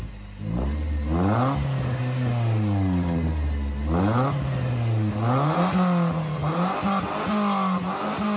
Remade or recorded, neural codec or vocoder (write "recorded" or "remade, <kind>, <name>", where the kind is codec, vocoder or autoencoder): recorded